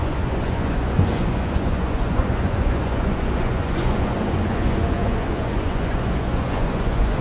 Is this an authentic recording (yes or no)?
no